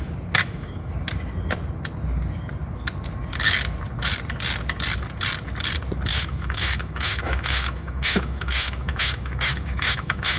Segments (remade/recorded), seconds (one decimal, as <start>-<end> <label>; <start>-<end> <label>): 0.0-0.4 recorded; 0.4-0.9 remade; 0.9-6.1 recorded; 6.1-10.4 remade